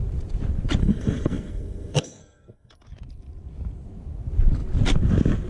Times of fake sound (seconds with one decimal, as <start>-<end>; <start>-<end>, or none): 0.8-2.7